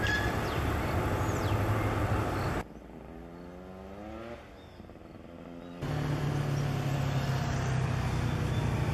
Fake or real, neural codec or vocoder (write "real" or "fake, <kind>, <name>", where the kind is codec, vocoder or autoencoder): real